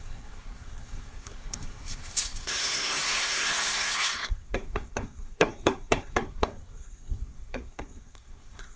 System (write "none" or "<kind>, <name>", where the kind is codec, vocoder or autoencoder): codec, SNAC